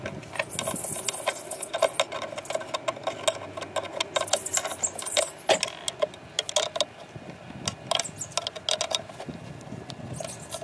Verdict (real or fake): real